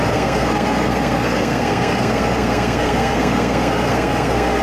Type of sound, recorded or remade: remade